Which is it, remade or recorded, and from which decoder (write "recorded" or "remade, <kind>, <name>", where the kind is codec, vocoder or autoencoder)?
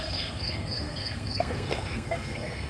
remade, codec, SNAC